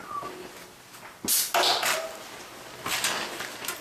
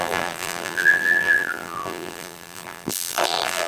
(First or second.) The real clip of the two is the first